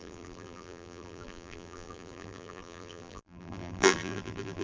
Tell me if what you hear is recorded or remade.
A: remade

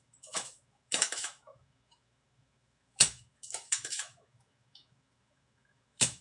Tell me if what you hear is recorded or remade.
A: remade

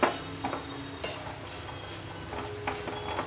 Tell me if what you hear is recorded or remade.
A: recorded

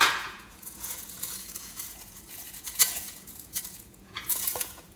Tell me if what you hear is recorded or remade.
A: remade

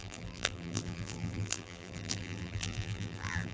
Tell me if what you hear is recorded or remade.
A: remade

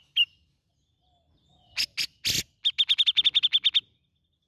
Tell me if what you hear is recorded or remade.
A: recorded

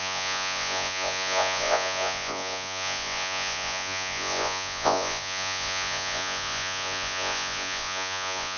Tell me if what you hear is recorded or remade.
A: remade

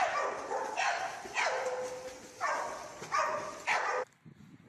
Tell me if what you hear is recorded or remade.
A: recorded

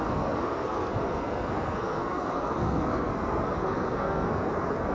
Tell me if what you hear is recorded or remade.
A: remade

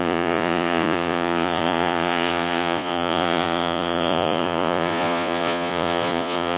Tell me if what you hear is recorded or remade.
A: remade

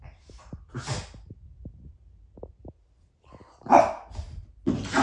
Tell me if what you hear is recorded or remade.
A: recorded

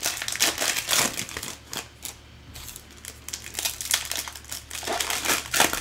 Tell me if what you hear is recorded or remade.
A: recorded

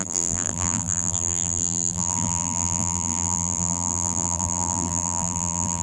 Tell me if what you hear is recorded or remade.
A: remade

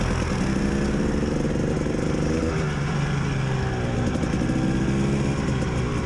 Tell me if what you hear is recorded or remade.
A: recorded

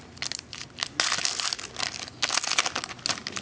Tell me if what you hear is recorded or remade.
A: recorded